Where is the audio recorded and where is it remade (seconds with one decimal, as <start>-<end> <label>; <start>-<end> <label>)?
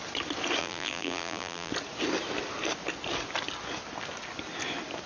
0.0-0.6 recorded; 0.6-1.7 remade; 1.7-5.1 recorded